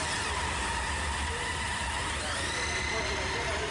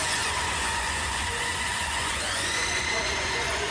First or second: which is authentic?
first